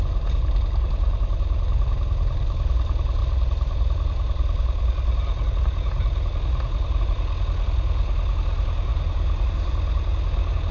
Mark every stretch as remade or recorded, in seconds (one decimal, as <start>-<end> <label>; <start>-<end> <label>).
0.0-10.7 recorded